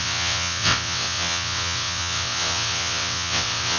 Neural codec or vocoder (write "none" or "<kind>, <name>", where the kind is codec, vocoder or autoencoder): vocoder, WaveNeXt